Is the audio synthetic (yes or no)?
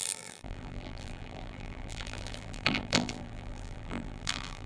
yes